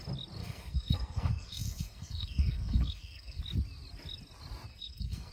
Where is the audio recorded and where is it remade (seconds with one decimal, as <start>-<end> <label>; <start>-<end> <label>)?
0.0-0.4 recorded; 0.4-3.4 remade; 3.4-4.7 recorded; 4.7-5.3 remade